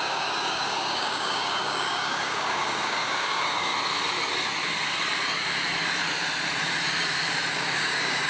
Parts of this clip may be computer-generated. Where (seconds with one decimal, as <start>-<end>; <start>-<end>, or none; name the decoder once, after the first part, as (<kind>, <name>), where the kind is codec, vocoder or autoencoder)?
0.0-3.7 (codec, DAC); 7.5-8.3